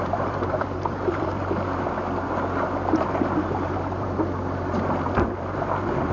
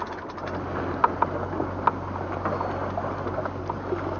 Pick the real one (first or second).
second